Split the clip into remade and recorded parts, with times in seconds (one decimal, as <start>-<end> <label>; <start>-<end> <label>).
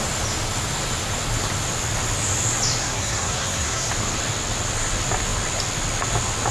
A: 0.0-2.8 recorded; 2.8-3.9 remade; 3.9-6.5 recorded